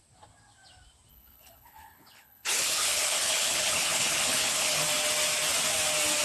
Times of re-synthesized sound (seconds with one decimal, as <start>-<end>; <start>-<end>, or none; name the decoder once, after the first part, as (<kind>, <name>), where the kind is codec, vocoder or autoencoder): 1.1-4.8 (codec, HILCodec)